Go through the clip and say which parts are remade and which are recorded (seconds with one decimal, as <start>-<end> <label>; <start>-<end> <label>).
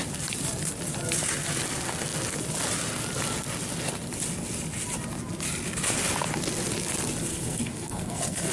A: 0.0-7.3 recorded; 7.3-8.5 remade